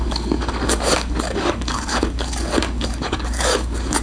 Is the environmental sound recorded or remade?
remade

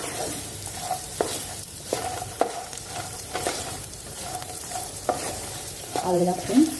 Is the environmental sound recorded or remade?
remade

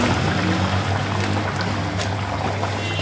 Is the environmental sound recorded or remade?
recorded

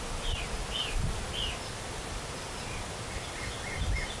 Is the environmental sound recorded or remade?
recorded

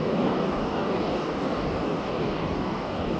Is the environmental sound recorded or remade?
remade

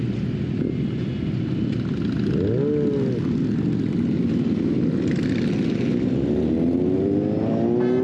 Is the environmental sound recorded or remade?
recorded